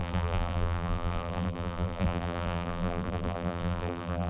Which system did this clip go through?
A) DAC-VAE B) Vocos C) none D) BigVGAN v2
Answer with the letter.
D